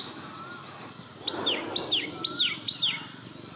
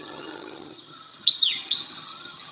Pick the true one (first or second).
first